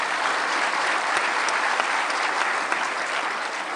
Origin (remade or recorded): remade